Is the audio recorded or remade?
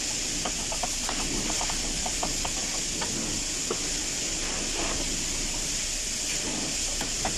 recorded